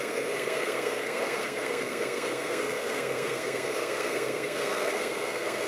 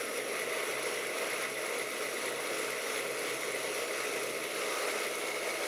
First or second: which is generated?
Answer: first